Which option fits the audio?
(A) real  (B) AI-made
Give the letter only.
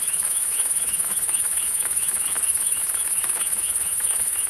B